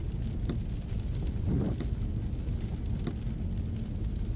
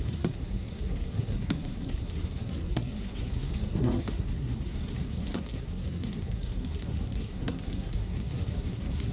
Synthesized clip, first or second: second